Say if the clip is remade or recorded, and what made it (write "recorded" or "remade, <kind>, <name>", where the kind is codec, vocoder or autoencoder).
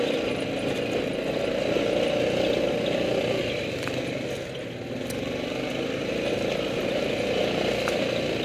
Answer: recorded